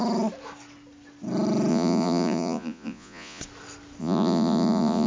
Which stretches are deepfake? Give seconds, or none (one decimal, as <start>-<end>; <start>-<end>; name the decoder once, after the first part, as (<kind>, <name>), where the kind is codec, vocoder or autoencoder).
1.7-3.4 (vocoder, Vocos); 4.0-5.1